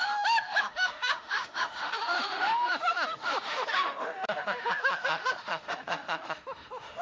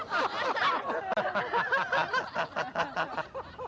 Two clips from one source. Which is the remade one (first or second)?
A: first